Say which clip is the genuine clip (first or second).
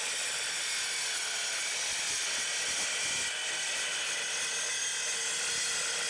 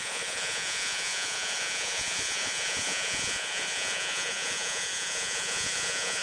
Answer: first